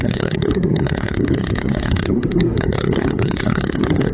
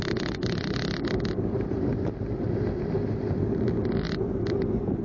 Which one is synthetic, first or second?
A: first